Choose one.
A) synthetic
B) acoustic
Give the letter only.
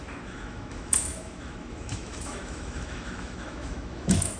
A